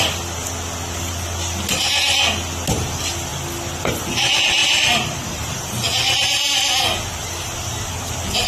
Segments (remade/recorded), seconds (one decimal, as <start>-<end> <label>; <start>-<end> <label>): 0.0-8.5 recorded

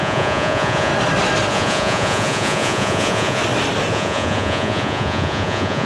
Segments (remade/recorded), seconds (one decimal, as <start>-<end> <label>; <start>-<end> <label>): 0.0-0.9 remade; 0.9-1.5 recorded; 1.5-3.4 remade; 3.4-3.9 recorded; 3.9-5.9 remade